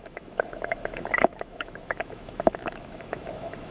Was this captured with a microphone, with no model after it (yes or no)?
no